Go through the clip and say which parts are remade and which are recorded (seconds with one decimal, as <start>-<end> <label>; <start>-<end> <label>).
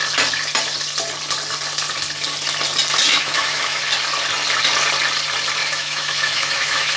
0.0-3.1 recorded; 3.1-3.8 remade; 3.8-5.6 recorded; 5.6-7.0 remade